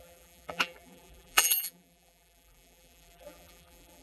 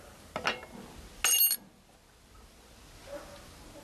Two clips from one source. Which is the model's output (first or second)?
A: first